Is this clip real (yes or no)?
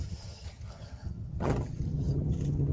no